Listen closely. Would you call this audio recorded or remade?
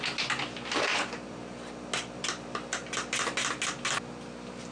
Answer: recorded